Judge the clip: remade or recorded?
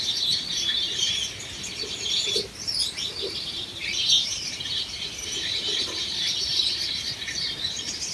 remade